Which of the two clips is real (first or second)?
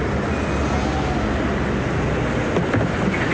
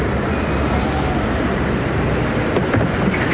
first